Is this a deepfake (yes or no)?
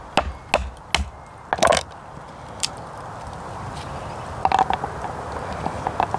no